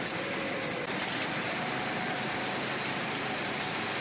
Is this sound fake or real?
fake